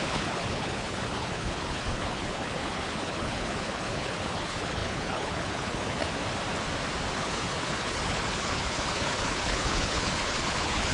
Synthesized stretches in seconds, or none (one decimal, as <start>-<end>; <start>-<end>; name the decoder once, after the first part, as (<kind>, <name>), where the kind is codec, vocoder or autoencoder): 0.0-6.0 (codec, HILCodec); 7.1-10.9